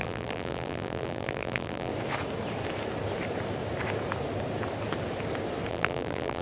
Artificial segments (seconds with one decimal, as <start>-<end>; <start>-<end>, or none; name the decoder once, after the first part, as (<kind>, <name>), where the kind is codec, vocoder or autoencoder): 0.0-1.9 (vocoder, BigVGAN v2); 5.7-6.4